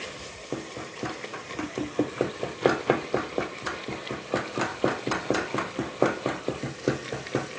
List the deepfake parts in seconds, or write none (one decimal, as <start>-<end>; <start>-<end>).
none